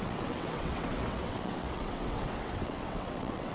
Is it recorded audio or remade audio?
remade